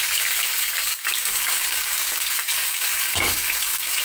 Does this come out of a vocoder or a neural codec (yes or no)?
yes